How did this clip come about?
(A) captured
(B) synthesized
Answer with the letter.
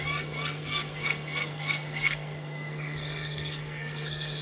B